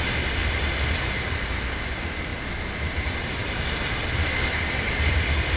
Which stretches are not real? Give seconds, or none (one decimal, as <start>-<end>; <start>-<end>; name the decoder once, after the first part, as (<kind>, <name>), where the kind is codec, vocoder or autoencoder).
0.0-0.4 (vocoder, BigVGAN v2); 1.0-2.3; 3.0-5.6